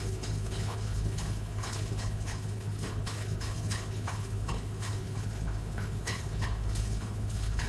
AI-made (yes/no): yes